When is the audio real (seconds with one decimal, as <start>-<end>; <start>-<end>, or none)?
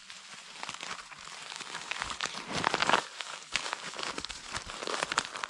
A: 0.0-1.4; 2.3-2.8; 4.5-5.5